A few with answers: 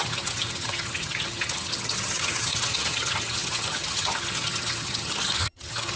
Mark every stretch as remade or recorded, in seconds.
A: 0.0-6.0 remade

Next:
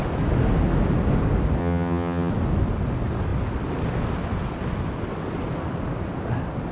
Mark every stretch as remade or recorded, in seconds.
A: 0.0-1.6 recorded; 1.6-2.3 remade; 2.3-6.7 recorded

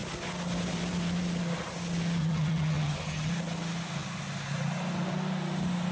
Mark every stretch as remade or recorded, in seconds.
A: 0.0-2.2 recorded; 2.2-3.3 remade; 3.3-5.9 recorded

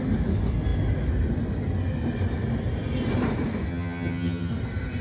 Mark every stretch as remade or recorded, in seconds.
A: 0.0-3.7 recorded; 3.7-4.5 remade; 4.5-5.0 recorded

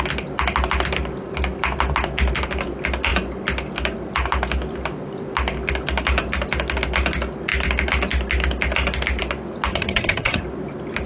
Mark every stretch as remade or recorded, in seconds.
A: 0.0-9.7 recorded; 9.7-10.4 remade; 10.4-11.1 recorded

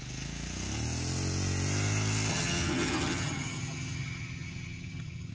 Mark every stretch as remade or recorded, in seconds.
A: 0.0-2.3 recorded; 2.3-5.3 remade